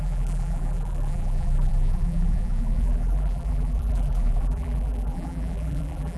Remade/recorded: remade